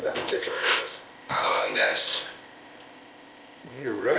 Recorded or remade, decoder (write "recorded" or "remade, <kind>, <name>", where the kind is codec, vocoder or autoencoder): remade, codec, ZipCodec